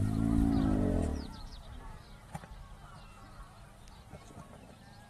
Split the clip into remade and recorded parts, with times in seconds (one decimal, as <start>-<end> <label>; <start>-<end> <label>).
0.0-1.1 recorded; 1.1-1.8 remade; 1.8-5.1 recorded